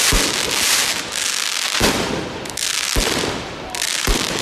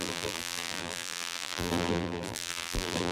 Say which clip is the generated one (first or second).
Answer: second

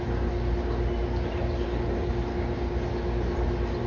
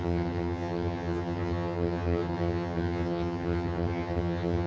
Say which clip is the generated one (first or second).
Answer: second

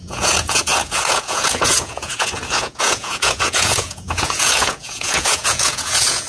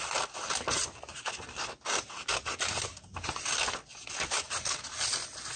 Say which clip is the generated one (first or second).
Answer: first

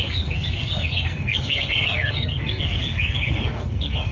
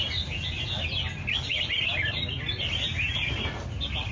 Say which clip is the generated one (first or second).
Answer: first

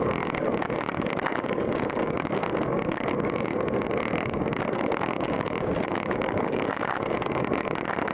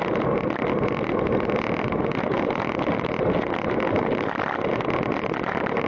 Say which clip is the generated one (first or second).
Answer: first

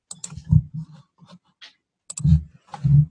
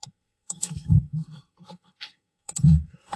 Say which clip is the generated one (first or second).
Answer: second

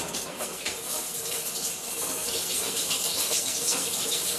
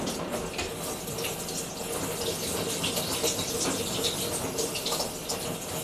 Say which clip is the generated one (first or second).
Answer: first